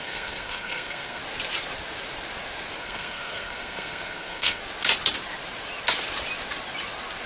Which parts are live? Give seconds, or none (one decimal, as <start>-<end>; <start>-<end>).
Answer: 1.2-2.8; 4.6-7.3